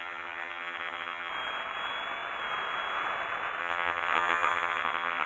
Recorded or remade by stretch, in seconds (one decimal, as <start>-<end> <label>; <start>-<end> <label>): 0.0-1.3 remade; 1.3-3.6 recorded; 3.6-5.3 remade